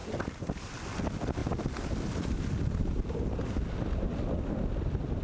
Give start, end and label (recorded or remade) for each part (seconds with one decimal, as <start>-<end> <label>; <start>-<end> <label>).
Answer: 0.0-5.2 recorded